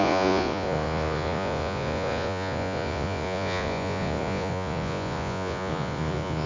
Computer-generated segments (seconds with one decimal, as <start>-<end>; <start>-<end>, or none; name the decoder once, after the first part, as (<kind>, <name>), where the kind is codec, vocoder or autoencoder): 0.0-6.5 (vocoder, Vocos)